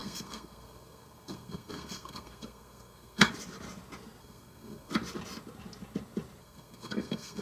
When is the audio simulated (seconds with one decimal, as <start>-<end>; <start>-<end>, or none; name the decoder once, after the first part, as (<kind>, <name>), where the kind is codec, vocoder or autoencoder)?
0.0-3.3 (codec, SNAC); 4.2-4.9; 6.4-7.4